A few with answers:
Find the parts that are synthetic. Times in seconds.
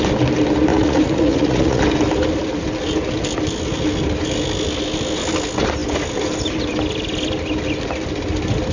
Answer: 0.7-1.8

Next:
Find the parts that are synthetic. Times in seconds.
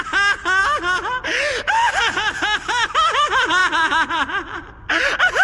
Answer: none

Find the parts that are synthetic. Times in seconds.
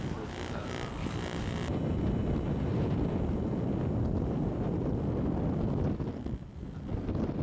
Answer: none